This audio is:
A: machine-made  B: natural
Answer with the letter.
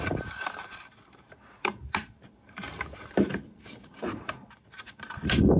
A